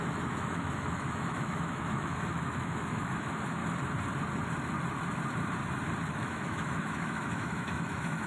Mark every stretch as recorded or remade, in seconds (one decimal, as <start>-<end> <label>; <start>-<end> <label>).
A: 0.0-3.6 remade; 3.6-6.1 recorded; 6.1-8.3 remade

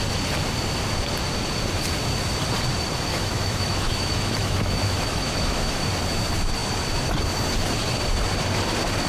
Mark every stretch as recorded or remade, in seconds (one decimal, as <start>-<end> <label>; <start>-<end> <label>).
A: 0.0-3.1 recorded; 3.1-5.8 remade; 5.8-9.1 recorded

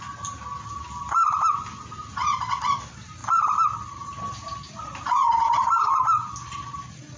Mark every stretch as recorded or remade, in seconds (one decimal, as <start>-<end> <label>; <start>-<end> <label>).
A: 0.0-7.2 recorded

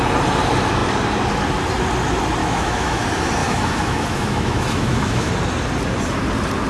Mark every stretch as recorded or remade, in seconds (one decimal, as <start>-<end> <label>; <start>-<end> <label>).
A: 0.0-2.4 recorded; 2.4-3.0 remade; 3.0-3.4 recorded; 3.4-5.3 remade; 5.3-6.7 recorded

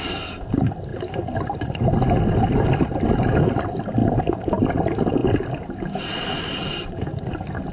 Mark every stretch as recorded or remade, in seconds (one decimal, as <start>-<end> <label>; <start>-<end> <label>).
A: 0.0-7.7 recorded

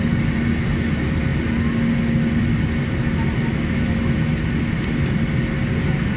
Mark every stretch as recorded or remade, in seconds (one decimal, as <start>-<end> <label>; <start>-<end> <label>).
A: 0.0-3.5 recorded; 3.5-4.3 remade; 4.3-6.2 recorded

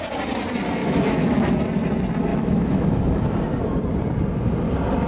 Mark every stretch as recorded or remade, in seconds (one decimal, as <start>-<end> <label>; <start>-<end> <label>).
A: 0.0-0.8 recorded; 0.8-1.5 remade; 1.5-2.3 recorded; 2.3-3.2 remade; 3.2-5.1 recorded